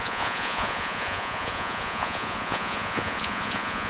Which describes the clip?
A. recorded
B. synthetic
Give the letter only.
B